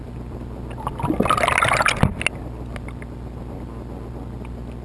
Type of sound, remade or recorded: recorded